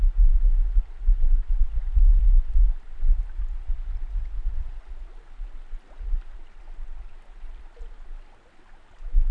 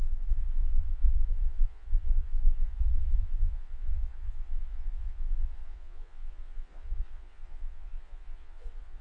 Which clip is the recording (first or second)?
first